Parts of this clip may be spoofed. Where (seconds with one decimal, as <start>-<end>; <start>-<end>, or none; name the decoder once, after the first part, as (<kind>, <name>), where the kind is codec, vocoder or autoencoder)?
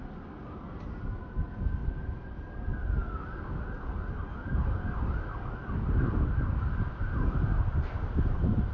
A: none